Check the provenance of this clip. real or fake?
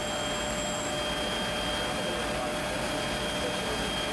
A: real